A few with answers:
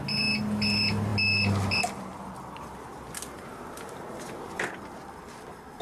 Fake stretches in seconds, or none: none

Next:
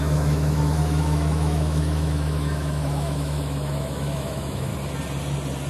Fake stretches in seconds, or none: 0.0-4.7 (autoencoder, DAC-VAE)

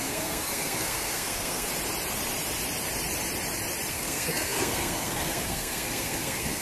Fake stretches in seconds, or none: 0.0-1.7 (codec, SNAC); 3.9-6.6

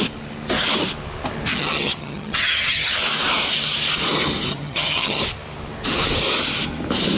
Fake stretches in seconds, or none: 1.5-3.0 (vocoder, HiFi-GAN); 4.5-5.2

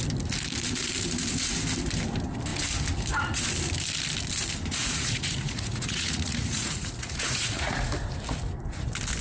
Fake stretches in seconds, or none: 4.7-7.9 (vocoder, Vocos)

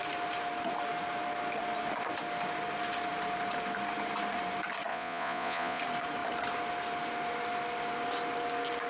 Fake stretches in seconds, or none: 4.9-5.8 (vocoder, Vocos)

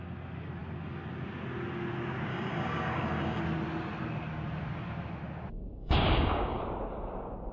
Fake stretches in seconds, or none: 2.3-3.4 (codec, DAC); 5.8-6.6

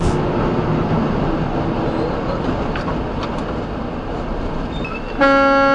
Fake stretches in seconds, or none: none